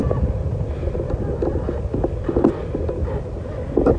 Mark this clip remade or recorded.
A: recorded